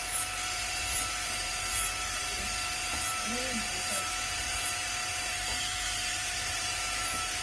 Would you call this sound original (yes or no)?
no